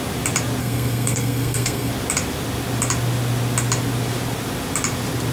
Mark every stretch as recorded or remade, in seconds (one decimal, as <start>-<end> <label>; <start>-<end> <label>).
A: 0.0-0.6 recorded; 0.6-1.9 remade; 1.9-5.3 recorded